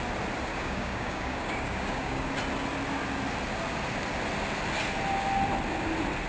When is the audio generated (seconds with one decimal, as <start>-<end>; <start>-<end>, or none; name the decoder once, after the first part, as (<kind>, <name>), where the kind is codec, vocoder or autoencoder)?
0.5-2.3 (codec, DAC)